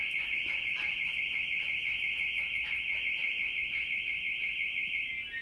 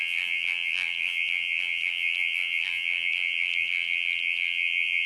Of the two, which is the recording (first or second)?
first